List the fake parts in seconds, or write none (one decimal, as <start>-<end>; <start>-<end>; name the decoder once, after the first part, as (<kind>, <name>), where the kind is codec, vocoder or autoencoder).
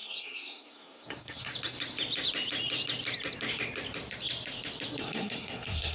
0.0-1.5 (codec, SNAC); 5.0-5.9